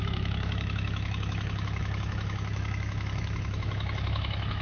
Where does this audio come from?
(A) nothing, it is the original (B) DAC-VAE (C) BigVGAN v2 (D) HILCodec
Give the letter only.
B